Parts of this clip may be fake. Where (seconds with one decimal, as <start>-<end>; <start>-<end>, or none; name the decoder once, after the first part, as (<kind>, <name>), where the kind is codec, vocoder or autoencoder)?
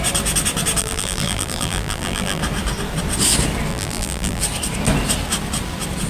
0.8-2.4 (vocoder, BigVGAN v2); 3.7-4.4